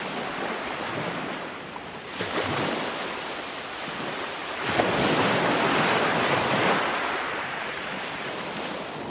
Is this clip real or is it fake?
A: real